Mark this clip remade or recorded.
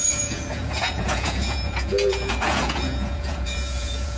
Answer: remade